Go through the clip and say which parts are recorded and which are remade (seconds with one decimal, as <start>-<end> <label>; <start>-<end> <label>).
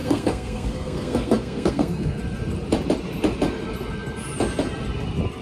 0.0-2.2 remade; 2.2-5.4 recorded